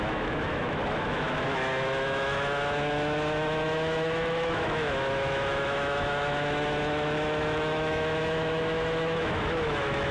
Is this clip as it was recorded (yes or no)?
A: no